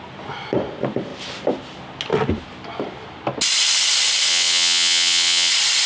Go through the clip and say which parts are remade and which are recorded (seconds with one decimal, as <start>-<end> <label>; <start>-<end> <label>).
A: 0.0-4.3 recorded; 4.3-5.5 remade; 5.5-5.9 recorded

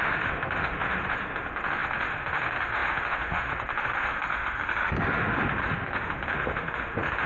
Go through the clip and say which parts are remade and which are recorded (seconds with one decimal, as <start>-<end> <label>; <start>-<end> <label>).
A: 0.0-7.3 remade

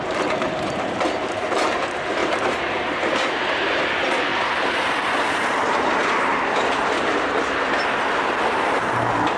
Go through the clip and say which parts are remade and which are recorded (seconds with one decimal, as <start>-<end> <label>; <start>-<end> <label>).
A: 0.0-4.3 remade; 4.3-5.5 recorded; 5.5-6.0 remade; 6.0-8.5 recorded; 8.5-9.4 remade

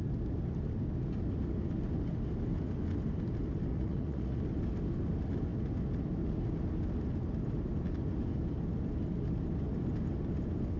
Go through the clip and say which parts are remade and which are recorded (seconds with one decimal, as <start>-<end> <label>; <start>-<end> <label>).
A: 0.0-3.7 recorded; 3.7-4.4 remade; 4.4-10.8 recorded

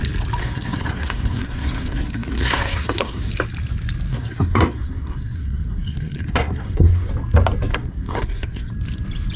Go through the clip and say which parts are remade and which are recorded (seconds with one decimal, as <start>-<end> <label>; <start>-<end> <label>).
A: 0.0-0.4 recorded; 0.4-3.3 remade; 3.3-4.1 recorded; 4.1-7.1 remade; 7.1-7.7 recorded; 7.7-8.7 remade; 8.7-9.4 recorded

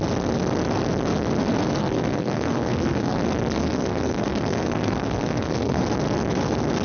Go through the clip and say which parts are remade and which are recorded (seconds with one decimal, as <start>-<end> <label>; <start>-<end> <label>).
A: 0.0-1.8 recorded; 1.8-3.2 remade; 3.2-3.6 recorded; 3.6-5.8 remade; 5.8-6.8 recorded

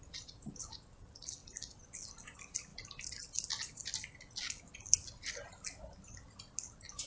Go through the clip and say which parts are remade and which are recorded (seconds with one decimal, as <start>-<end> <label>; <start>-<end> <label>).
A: 0.0-7.1 recorded

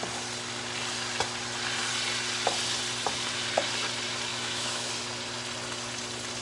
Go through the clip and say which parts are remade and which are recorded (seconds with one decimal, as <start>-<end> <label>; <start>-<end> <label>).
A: 0.0-4.3 recorded; 4.3-4.9 remade; 4.9-6.4 recorded